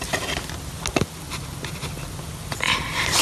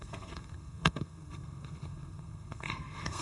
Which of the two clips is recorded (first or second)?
first